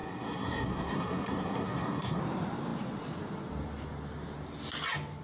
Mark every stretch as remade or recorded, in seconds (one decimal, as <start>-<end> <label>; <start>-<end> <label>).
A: 0.0-2.2 remade; 2.2-5.2 recorded